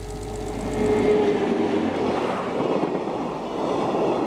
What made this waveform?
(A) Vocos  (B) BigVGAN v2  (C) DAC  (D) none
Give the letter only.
D